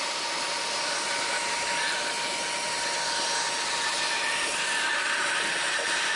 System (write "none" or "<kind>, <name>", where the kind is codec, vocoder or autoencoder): none